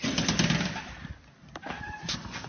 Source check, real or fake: real